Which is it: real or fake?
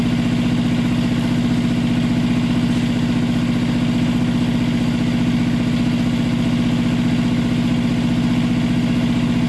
real